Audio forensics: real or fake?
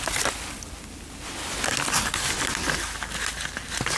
real